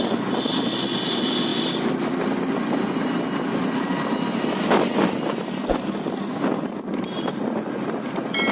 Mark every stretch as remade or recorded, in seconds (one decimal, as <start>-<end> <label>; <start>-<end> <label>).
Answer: 0.0-8.5 recorded